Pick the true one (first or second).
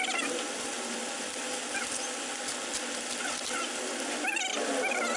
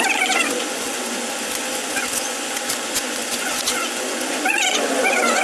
first